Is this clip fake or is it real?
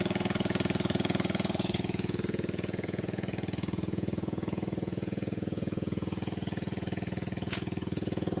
fake